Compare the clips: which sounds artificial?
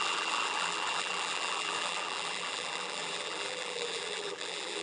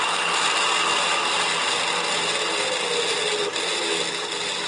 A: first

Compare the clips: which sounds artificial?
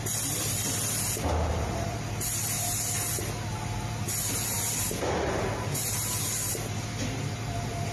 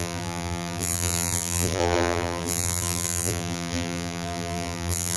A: second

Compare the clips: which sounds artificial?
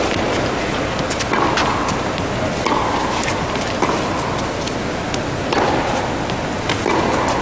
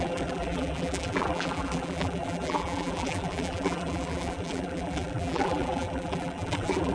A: second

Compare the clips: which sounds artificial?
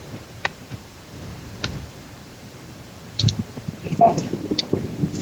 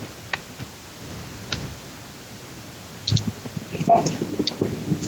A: first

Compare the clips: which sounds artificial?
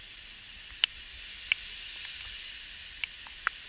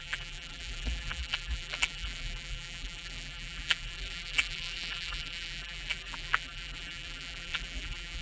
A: second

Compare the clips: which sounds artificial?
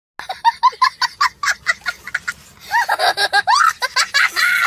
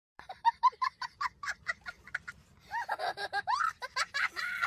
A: second